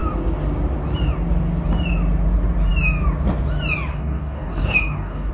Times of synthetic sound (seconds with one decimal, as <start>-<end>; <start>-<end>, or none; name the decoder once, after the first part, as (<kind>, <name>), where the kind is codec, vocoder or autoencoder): 3.9-5.3 (codec, DAC)